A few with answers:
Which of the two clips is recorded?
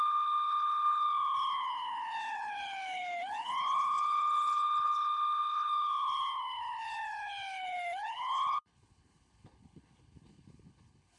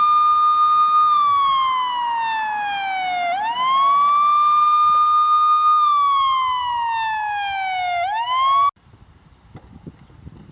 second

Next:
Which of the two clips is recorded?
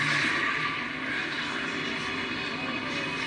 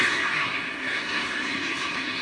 first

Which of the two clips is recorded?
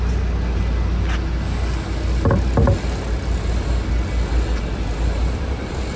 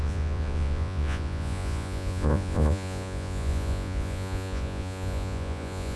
first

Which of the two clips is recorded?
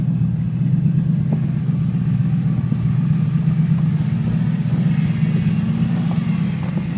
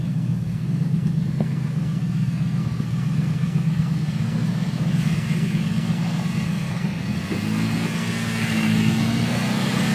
first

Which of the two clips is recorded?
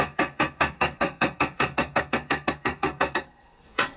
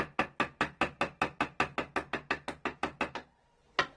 second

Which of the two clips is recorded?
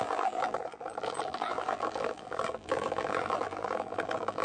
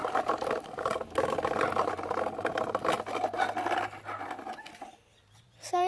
second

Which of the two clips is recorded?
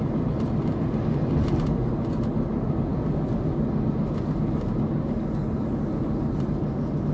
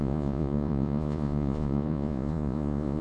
first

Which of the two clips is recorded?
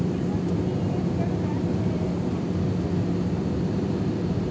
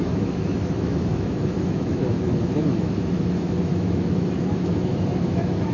first